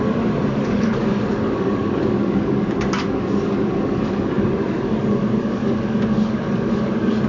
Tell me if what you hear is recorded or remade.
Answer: remade